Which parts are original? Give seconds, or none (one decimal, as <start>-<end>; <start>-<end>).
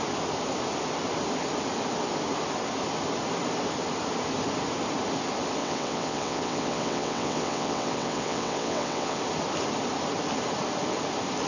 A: 0.0-5.6; 9.2-11.5